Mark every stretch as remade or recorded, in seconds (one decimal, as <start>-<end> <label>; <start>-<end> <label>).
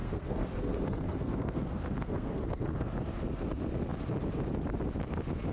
0.0-2.9 remade; 2.9-5.5 recorded